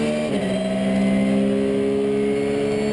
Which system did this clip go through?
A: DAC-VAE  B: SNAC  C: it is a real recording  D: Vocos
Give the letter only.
C